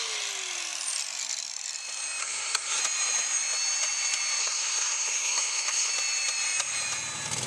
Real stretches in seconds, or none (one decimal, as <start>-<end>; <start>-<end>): 0.0-2.2; 2.8-4.4; 5.9-7.5